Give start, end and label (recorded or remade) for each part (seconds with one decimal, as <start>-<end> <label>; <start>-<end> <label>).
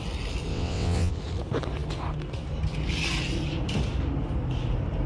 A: 0.0-0.5 recorded; 0.5-1.1 remade; 1.1-5.1 recorded